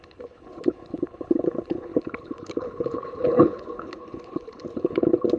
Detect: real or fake fake